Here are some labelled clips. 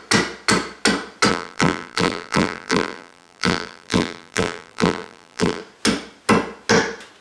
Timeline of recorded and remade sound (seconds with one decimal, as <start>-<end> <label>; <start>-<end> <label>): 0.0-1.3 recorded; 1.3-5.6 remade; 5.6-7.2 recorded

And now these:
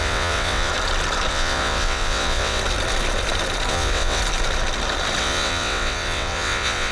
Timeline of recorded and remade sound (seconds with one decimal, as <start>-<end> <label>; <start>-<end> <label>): 0.0-0.7 remade; 0.7-1.3 recorded; 1.3-2.6 remade; 2.6-3.7 recorded; 3.7-4.2 remade; 4.2-5.2 recorded; 5.2-6.9 remade

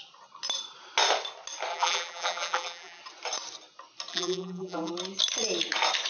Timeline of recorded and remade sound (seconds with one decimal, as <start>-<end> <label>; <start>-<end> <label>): 0.0-1.7 recorded; 1.7-3.0 remade; 3.0-4.1 recorded; 4.1-4.9 remade; 4.9-6.1 recorded

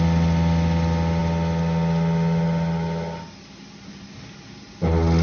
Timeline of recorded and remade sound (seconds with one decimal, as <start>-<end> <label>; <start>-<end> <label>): 0.0-5.2 recorded